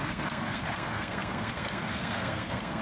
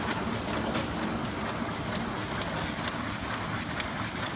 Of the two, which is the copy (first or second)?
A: first